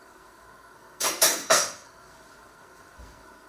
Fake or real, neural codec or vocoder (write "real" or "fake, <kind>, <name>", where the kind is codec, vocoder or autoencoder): fake, codec, SNAC